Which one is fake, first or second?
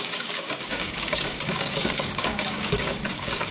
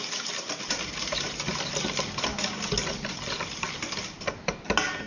first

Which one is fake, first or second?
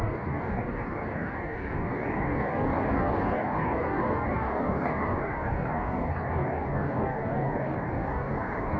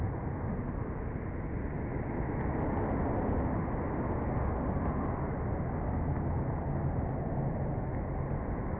first